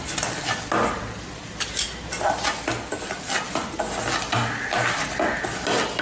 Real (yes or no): yes